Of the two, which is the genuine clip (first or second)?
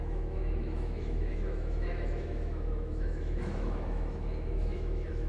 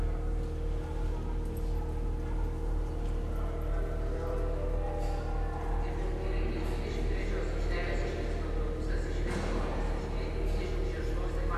second